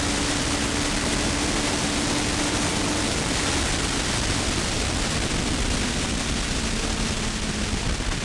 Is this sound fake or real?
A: real